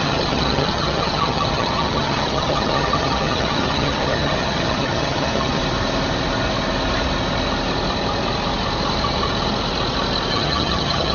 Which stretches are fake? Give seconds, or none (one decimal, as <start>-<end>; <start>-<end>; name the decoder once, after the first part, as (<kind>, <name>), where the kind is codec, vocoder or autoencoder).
0.0-5.6 (vocoder, HiFi-GAN); 10.3-11.1